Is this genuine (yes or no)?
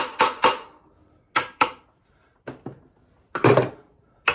yes